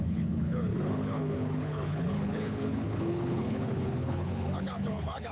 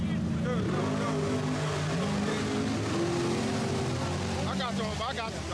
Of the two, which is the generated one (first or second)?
first